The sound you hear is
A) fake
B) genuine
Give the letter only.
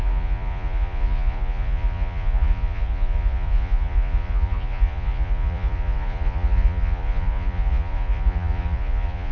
A